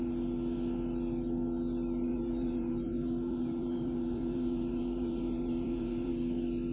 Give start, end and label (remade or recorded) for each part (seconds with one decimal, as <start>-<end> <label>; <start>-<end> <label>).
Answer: 0.0-2.1 recorded; 2.1-6.1 remade; 6.1-6.7 recorded